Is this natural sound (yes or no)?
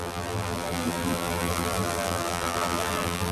no